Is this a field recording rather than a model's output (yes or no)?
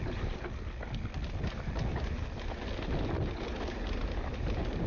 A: yes